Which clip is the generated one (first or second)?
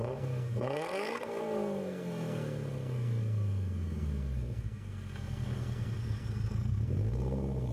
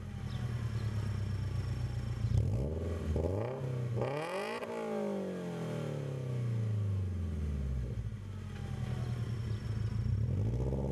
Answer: first